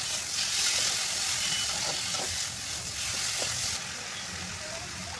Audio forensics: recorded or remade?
recorded